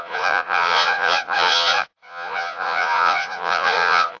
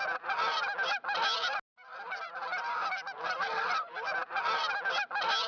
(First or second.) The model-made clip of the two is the first